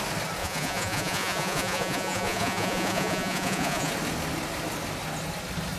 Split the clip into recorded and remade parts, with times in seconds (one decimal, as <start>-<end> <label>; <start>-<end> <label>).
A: 0.0-0.4 recorded; 0.4-3.9 remade; 3.9-5.8 recorded